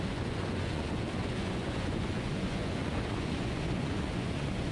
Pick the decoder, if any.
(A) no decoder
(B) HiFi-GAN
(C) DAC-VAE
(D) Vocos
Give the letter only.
D